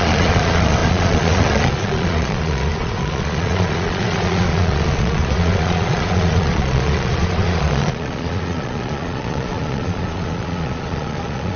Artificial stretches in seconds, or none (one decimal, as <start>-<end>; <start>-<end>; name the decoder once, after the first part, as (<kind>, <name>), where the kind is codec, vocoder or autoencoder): 0.0-11.6 (vocoder, Vocos)